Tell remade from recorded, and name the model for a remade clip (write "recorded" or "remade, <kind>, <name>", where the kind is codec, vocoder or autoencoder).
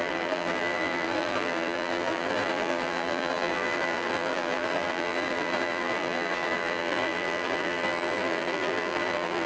remade, vocoder, BigVGAN v2